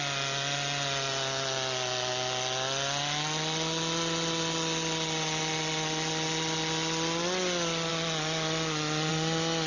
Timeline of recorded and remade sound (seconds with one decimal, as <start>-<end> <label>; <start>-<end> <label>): 0.0-9.7 recorded